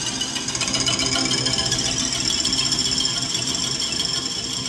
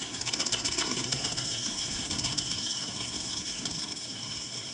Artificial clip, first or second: second